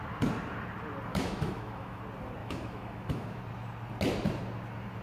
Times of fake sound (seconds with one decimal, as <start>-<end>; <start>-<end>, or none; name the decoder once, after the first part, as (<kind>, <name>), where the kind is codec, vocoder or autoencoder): 1.1-2.0 (autoencoder, DAC-VAE); 2.4-3.4